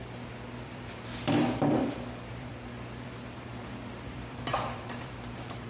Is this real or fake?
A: fake